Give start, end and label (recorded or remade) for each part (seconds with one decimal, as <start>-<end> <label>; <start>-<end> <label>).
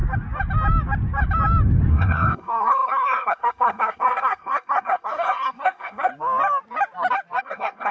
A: 0.0-1.9 recorded; 1.9-6.1 remade; 6.1-7.4 recorded; 7.4-7.9 remade